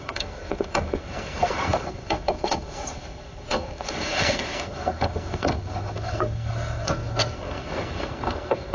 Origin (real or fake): fake